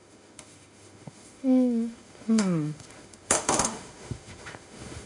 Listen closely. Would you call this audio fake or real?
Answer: fake